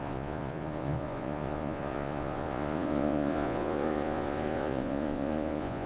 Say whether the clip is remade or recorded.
remade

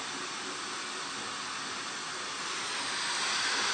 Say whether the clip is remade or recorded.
recorded